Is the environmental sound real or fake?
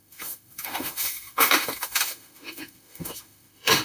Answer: fake